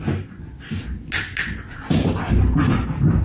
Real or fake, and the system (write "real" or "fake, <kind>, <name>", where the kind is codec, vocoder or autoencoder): real